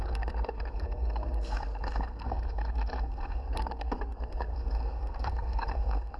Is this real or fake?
fake